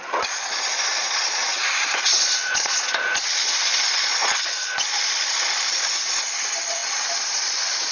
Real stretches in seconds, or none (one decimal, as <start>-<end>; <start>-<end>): none